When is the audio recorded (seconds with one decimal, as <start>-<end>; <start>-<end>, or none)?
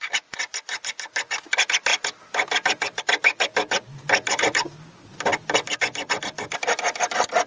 0.0-7.5